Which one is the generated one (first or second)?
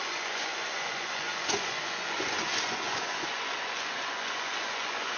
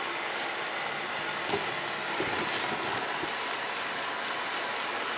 first